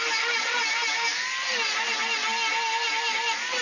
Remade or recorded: recorded